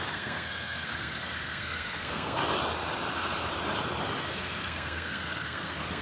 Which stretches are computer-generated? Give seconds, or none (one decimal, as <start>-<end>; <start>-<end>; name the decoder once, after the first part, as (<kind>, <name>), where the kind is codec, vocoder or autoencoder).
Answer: 0.0-2.4 (codec, SNAC); 4.2-6.0